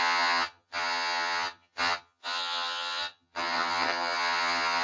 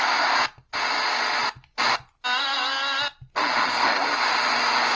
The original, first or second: second